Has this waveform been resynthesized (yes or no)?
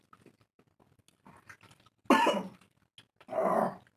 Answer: no